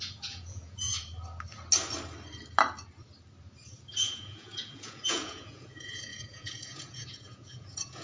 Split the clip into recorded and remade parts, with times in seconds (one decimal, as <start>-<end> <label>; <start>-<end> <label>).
0.0-0.9 remade; 0.9-3.9 recorded; 3.9-8.0 remade